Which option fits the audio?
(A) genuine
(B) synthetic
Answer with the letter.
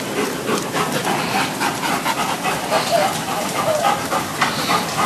A